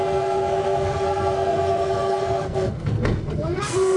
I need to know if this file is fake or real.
fake